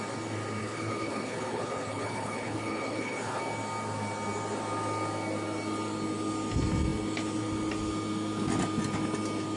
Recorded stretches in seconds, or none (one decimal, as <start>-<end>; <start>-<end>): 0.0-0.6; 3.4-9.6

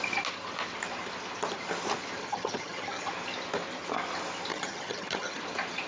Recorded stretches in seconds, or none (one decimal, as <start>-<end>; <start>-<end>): 0.0-2.2; 3.1-4.5; 5.4-5.9

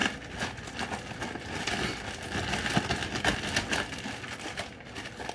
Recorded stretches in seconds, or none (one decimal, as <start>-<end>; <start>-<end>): 0.0-5.3

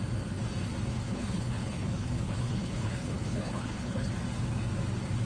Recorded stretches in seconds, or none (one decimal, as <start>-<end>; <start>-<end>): 0.0-0.9; 4.1-5.3

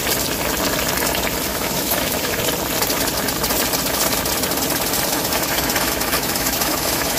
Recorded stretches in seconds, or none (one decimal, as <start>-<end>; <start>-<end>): 0.0-1.5; 2.4-5.1

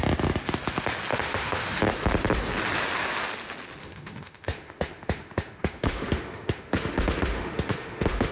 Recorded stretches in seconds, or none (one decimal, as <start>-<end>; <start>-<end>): 0.0-1.1; 1.6-3.8